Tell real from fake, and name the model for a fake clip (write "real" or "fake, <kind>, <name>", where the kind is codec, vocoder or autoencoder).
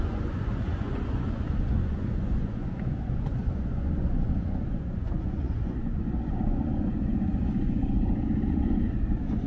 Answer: fake, vocoder, Vocos